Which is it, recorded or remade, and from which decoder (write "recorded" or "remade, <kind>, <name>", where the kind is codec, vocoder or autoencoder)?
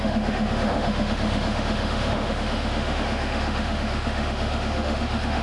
remade, autoencoder, DAC-VAE